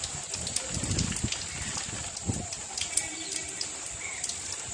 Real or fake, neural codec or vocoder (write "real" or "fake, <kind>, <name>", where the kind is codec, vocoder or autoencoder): real